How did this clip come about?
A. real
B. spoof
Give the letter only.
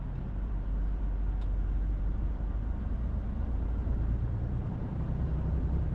B